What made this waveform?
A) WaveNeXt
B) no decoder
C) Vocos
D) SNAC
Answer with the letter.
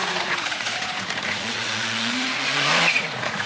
C